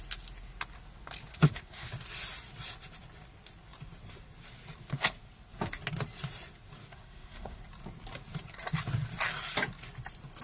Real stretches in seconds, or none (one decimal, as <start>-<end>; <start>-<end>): 0.0-1.3; 1.9-6.9; 7.6-10.4